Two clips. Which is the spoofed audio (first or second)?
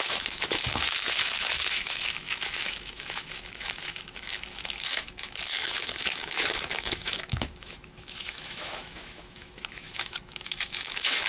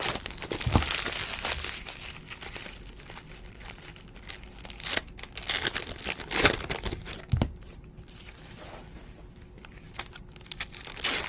first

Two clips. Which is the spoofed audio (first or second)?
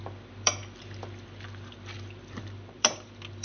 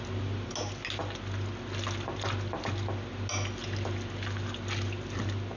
first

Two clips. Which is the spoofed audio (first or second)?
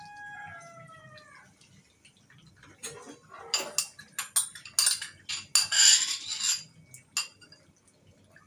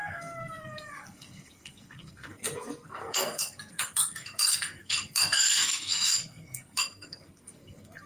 second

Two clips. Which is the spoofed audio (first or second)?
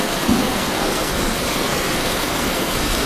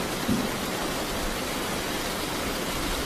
first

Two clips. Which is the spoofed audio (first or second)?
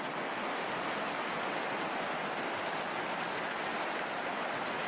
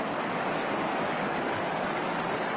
second